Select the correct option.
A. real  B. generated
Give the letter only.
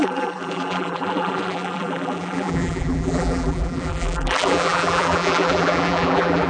B